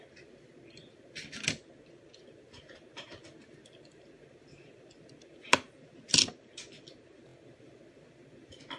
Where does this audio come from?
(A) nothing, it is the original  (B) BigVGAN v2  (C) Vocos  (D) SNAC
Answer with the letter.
A